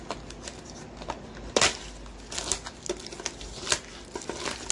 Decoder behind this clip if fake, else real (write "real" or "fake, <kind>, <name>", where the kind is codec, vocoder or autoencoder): real